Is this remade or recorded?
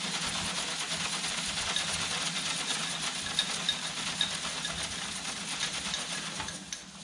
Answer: recorded